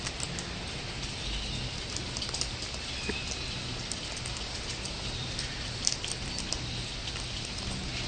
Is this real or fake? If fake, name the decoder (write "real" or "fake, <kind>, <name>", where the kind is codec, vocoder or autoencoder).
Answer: real